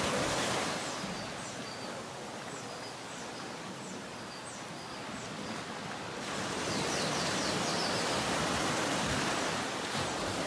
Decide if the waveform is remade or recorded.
recorded